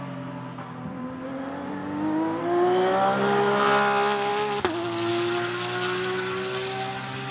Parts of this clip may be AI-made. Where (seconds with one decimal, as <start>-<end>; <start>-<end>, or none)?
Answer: 1.8-2.4